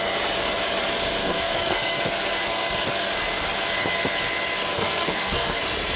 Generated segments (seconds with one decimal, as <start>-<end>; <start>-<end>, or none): 1.2-2.0; 4.7-5.6